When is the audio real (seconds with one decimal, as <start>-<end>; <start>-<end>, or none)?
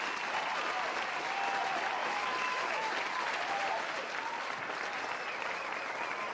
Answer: 0.0-2.0; 2.9-6.3